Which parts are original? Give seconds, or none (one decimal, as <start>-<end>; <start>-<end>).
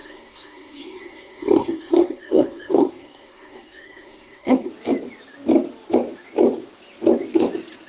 4.7-7.9